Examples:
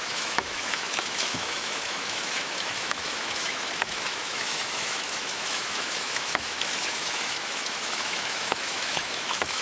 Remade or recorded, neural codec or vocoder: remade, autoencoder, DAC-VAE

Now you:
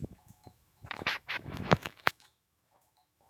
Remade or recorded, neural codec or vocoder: remade, autoencoder, DAC-VAE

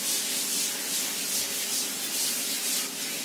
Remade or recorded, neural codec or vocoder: recorded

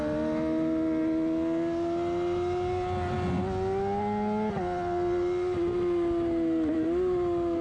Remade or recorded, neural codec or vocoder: recorded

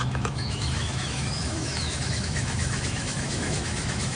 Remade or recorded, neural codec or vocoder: remade, autoencoder, DAC-VAE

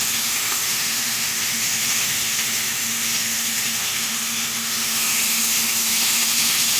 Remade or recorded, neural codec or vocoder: remade, autoencoder, DAC-VAE